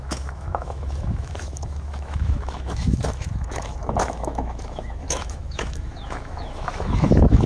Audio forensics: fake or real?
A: fake